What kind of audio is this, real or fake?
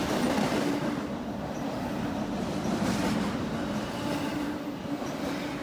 real